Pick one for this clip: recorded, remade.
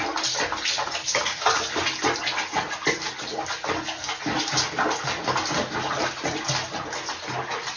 recorded